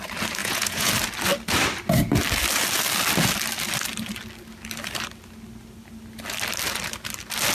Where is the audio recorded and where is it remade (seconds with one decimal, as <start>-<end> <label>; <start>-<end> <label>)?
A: 0.0-0.4 recorded; 0.4-0.9 remade; 0.9-7.5 recorded